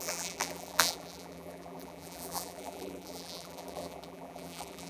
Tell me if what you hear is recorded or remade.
remade